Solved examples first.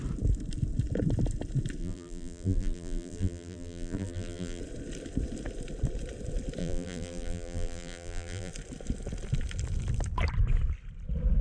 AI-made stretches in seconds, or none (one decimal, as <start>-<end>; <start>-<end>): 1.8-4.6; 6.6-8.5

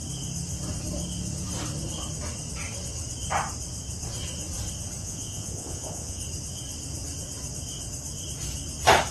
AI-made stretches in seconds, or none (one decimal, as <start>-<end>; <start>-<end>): 5.0-6.2

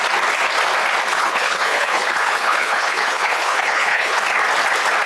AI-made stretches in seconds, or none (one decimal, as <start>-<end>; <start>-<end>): 1.1-4.2

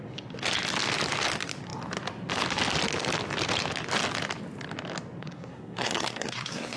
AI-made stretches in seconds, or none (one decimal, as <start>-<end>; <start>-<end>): 5.2-6.8

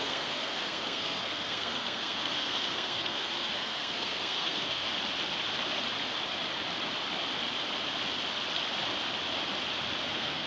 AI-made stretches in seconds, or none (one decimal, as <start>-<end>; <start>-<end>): 0.0-4.9; 10.1-10.5